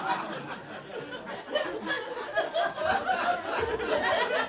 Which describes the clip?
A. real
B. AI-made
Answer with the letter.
A